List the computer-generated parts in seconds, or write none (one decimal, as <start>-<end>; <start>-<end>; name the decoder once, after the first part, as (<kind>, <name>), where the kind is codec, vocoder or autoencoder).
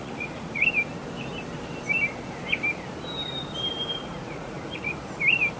0.0-0.6 (vocoder, Vocos); 4.0-4.9